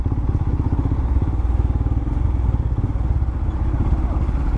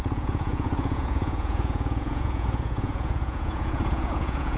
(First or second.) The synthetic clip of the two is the second